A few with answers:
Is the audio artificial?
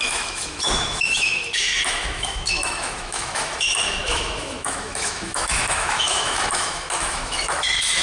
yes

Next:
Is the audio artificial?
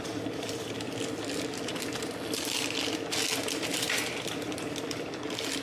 no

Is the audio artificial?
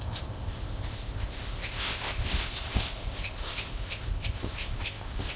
yes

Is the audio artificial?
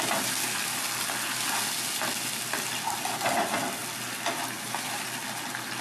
no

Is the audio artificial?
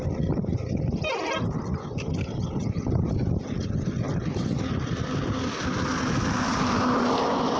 no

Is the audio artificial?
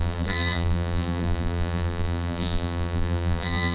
yes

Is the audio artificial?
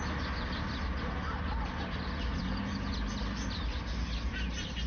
no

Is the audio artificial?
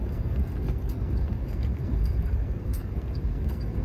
yes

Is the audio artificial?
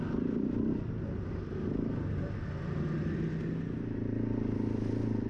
no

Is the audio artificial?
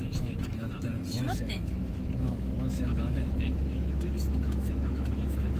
yes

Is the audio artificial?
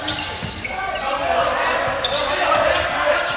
no